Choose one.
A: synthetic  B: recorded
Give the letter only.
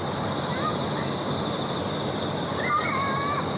B